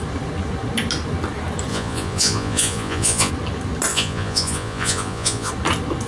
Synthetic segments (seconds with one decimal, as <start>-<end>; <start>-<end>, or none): 1.7-3.3; 3.9-5.5